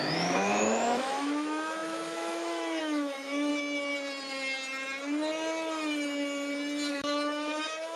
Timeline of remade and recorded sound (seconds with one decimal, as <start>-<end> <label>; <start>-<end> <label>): 0.0-3.5 remade; 3.5-6.9 recorded; 6.9-8.0 remade